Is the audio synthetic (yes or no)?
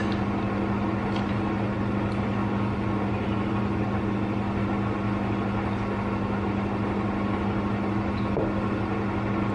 no